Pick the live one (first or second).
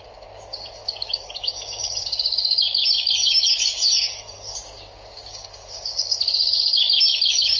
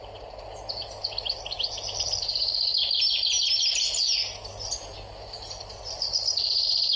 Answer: second